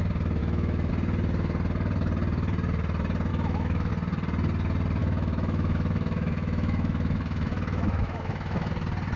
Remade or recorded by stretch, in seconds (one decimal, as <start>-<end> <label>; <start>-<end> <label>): 0.0-0.4 recorded; 0.4-0.9 remade; 0.9-3.3 recorded; 3.3-3.9 remade; 3.9-5.0 recorded; 5.0-8.7 remade; 8.7-9.2 recorded